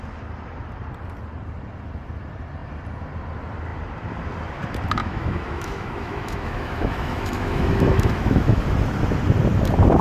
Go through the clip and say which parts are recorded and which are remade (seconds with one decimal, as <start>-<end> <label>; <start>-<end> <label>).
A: 0.0-5.0 recorded; 5.0-8.6 remade; 8.6-10.0 recorded

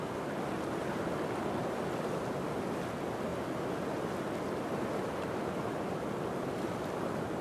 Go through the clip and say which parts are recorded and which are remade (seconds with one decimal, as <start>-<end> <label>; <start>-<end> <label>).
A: 0.0-7.4 recorded

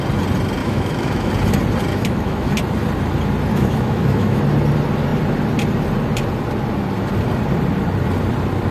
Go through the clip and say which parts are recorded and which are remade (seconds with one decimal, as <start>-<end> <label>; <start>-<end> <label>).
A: 0.0-0.6 recorded; 0.6-1.3 remade; 1.3-1.9 recorded; 1.9-2.5 remade; 2.5-3.5 recorded; 3.5-4.4 remade; 4.4-8.7 recorded

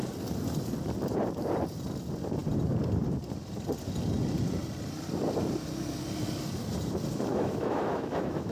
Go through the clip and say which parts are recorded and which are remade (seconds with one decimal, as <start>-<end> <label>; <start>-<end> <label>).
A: 0.0-7.3 recorded; 7.3-8.5 remade

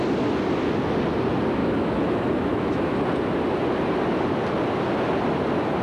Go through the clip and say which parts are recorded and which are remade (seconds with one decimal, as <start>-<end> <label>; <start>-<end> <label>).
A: 0.0-1.6 recorded; 1.6-3.0 remade; 3.0-5.8 recorded

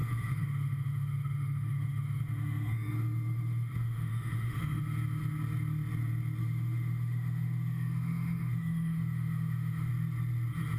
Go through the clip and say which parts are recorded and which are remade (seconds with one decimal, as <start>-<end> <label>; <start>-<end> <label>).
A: 0.0-4.8 remade; 4.8-6.4 recorded; 6.4-9.9 remade; 9.9-10.8 recorded